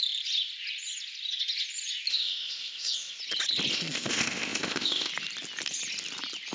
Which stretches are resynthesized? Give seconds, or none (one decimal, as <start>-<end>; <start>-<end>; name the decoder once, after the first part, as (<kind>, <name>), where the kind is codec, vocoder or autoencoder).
2.1-3.2 (codec, ZipCodec); 3.7-5.1